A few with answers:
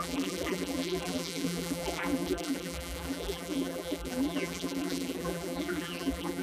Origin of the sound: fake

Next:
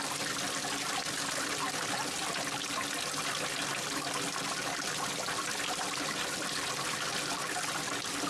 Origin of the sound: real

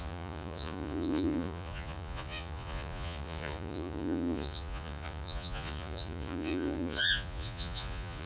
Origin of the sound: fake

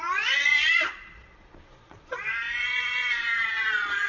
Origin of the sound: fake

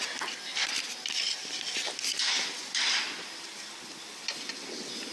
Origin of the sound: real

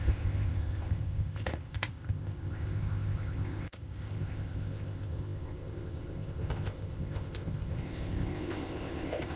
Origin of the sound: fake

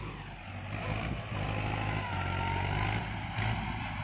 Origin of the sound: real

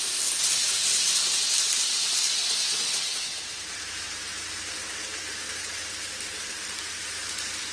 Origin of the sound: real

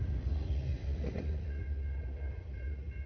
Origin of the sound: fake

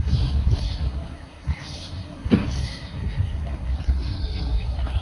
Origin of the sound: fake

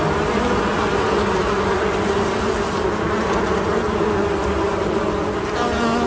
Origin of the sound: real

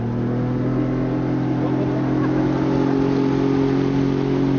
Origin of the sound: real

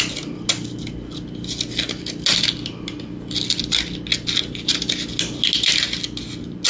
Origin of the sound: real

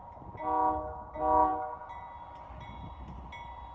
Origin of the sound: real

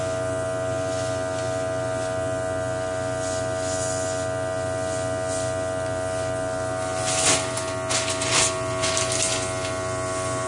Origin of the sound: real